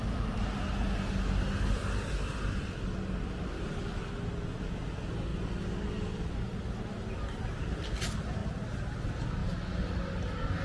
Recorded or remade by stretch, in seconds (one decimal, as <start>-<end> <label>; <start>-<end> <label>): 0.0-10.6 recorded